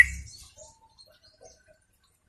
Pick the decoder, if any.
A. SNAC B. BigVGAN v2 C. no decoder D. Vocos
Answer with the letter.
C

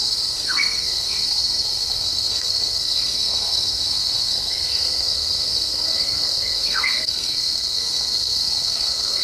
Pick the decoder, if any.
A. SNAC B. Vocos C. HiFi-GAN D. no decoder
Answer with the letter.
A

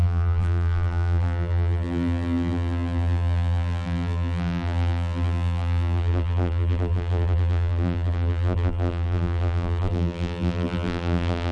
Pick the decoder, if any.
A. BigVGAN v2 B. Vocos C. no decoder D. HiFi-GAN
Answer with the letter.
A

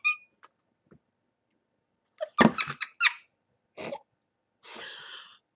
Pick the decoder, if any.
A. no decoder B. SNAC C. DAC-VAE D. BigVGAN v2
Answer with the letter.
A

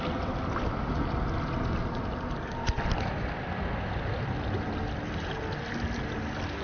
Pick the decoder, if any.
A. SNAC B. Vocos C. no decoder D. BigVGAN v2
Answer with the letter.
C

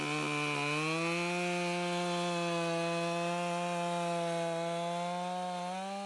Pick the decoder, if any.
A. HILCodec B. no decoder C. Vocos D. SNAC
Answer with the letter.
B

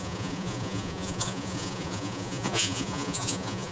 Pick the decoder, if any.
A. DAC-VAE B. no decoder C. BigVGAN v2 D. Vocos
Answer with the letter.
D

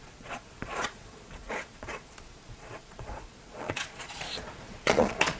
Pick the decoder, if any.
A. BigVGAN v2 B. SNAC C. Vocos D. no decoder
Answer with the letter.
C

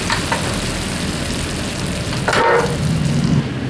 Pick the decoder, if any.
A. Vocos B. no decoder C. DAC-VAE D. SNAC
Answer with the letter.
B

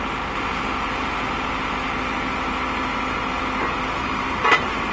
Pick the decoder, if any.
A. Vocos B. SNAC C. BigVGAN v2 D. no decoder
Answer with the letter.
D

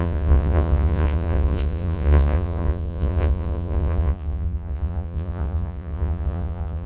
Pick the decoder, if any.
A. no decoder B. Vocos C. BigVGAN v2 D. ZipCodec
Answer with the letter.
B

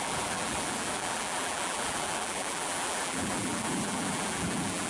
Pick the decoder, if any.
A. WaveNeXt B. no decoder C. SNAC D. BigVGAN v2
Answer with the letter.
D